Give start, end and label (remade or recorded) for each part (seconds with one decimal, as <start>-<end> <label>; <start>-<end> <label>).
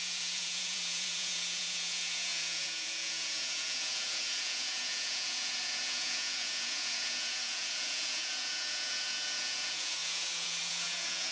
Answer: 0.0-11.3 remade